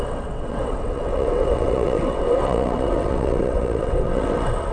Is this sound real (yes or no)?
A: no